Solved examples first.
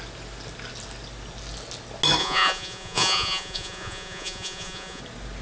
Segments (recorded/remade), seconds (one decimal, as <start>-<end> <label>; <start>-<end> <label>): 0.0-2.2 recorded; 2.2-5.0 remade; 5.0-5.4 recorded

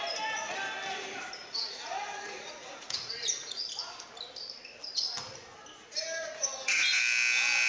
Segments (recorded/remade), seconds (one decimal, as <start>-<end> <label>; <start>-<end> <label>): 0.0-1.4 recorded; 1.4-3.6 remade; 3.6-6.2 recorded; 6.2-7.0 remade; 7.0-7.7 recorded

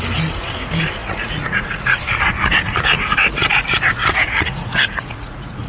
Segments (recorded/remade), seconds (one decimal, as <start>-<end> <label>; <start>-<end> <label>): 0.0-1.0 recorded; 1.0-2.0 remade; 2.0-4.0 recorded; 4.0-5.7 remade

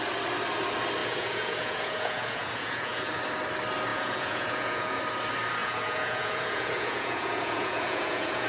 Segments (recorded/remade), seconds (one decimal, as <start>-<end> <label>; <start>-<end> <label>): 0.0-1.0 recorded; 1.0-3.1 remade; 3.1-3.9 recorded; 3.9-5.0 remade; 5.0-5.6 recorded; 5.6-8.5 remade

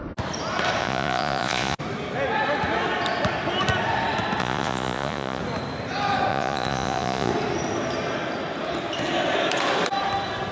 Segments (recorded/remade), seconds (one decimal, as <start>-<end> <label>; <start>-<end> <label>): 0.0-0.8 recorded; 0.8-1.8 remade; 1.8-4.4 recorded; 4.4-5.4 remade; 5.4-6.3 recorded; 6.3-7.3 remade; 7.3-10.5 recorded